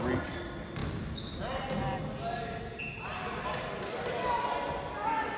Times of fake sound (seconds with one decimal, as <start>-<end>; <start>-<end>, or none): none